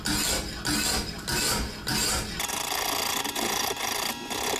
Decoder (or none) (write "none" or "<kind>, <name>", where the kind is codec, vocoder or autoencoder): none